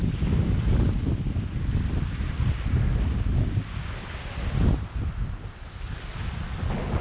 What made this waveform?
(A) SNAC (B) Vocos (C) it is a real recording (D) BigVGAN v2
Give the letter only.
C